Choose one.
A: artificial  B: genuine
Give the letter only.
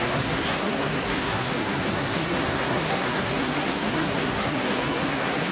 A